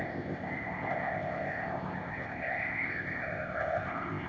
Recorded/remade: remade